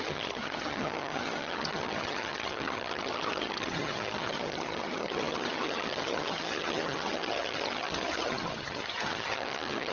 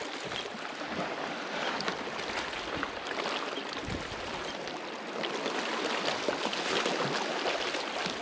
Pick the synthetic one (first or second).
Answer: first